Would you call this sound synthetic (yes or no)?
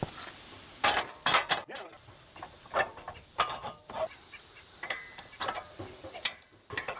no